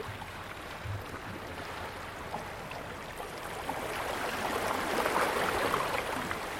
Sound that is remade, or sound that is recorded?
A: recorded